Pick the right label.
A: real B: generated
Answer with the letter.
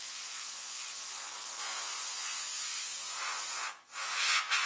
B